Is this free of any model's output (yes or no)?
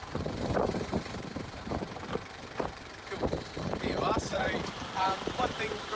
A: no